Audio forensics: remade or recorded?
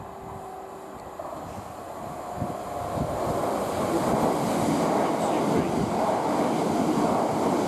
recorded